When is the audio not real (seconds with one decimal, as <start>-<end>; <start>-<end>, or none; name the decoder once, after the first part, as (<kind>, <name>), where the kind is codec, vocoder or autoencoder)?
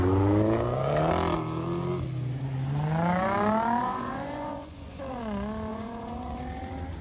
3.8-5.2 (vocoder, Vocos); 5.7-6.4